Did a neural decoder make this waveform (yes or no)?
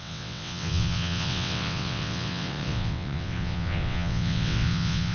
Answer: yes